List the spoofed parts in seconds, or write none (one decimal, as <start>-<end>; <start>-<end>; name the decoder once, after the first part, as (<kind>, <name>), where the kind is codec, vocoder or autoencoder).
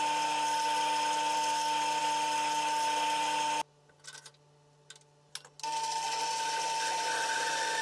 none